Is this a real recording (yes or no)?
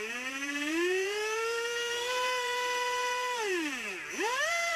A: no